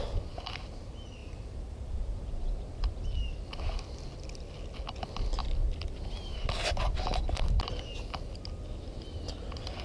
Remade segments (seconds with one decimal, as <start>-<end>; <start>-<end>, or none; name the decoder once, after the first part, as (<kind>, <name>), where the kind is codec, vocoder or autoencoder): 1.2-3.7 (vocoder, BigVGAN v2); 5.4-6.7